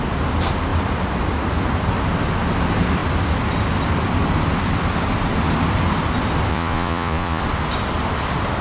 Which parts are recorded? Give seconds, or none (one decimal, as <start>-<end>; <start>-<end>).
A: 0.0-6.5; 7.4-8.6